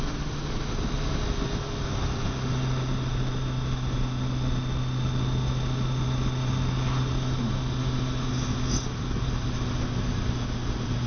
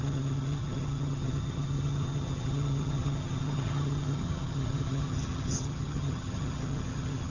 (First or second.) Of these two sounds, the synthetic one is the second